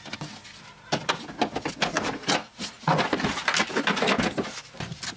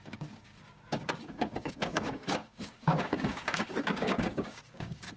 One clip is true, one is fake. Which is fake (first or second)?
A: second